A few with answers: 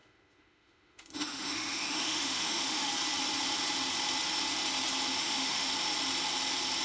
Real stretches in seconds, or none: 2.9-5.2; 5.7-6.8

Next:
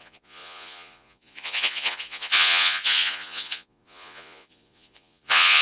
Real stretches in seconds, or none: none

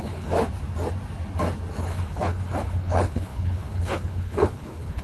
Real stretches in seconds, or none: 0.4-1.8

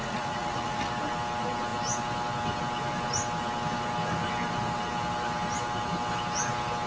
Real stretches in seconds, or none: 0.9-6.9